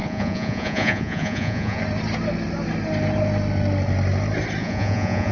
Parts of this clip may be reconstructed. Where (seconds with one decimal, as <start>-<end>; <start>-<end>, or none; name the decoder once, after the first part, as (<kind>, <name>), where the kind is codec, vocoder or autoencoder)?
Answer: 0.0-1.8 (vocoder, Vocos); 4.6-5.3